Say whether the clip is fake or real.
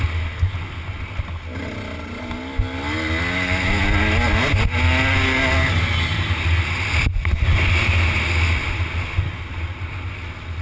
real